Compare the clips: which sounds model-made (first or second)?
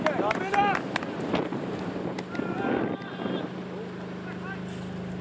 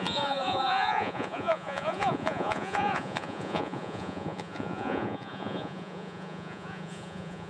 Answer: second